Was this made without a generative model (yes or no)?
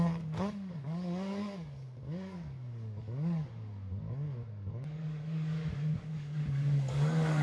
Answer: no